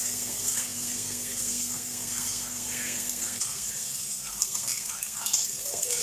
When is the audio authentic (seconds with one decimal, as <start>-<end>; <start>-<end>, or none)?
none